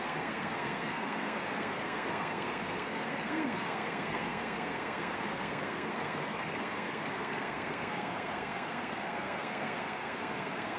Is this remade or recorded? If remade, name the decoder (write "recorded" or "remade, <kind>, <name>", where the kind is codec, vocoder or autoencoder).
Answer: remade, codec, SNAC